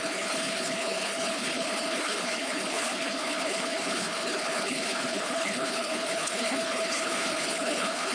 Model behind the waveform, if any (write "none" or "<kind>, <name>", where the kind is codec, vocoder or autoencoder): codec, HILCodec